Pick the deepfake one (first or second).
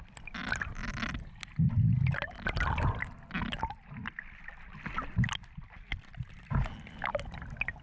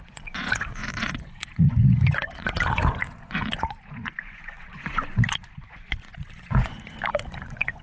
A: second